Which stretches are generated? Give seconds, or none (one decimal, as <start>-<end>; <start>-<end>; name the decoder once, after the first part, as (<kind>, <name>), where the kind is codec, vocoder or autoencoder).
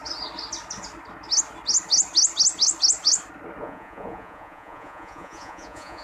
3.6-6.0 (vocoder, Vocos)